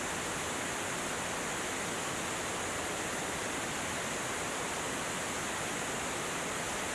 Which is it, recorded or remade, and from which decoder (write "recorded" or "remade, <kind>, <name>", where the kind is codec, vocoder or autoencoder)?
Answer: recorded